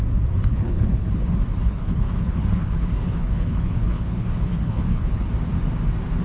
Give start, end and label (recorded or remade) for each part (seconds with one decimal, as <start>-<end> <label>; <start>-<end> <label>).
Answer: 0.0-0.5 recorded; 0.5-1.1 remade; 1.1-1.6 recorded; 1.6-5.3 remade; 5.3-6.2 recorded